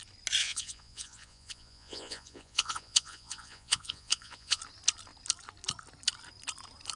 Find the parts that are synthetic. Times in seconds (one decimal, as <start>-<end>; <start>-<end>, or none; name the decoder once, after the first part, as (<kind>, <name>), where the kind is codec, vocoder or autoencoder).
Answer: 0.4-4.6 (vocoder, Vocos)